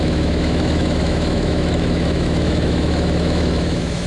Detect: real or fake fake